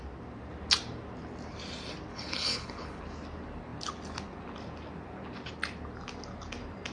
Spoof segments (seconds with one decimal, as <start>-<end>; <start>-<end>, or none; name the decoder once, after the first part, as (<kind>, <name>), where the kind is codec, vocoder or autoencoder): 2.1-3.0 (codec, HILCodec)